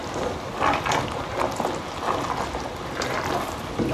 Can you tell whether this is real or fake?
real